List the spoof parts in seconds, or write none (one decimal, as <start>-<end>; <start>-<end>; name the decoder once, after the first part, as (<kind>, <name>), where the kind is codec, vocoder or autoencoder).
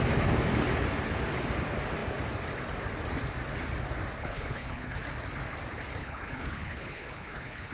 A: 4.2-5.0 (codec, HILCodec); 6.0-7.7